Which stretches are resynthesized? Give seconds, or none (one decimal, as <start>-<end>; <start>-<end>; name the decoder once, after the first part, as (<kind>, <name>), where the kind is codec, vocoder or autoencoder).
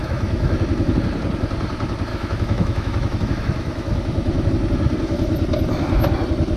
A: 0.0-0.6 (autoencoder, DAC-VAE); 2.1-4.5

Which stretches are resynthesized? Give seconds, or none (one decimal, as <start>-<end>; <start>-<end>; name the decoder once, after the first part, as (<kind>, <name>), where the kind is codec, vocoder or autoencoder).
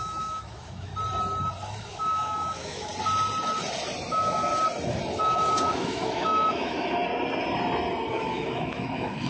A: 0.0-0.9 (autoencoder, DAC-VAE); 1.8-2.9; 4.1-4.5; 5.2-7.0; 8.1-9.3